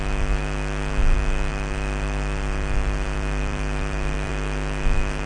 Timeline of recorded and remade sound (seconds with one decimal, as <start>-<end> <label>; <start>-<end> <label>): 0.0-1.5 recorded; 1.5-4.3 remade; 4.3-5.3 recorded